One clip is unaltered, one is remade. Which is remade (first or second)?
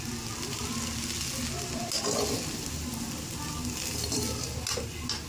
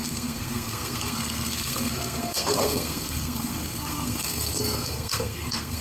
second